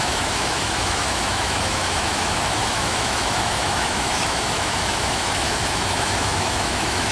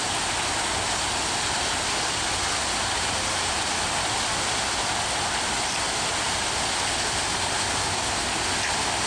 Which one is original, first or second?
second